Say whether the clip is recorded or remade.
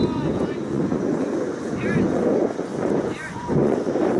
remade